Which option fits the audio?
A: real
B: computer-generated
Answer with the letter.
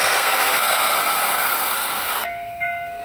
B